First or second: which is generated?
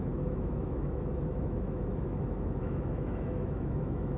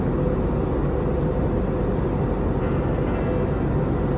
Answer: first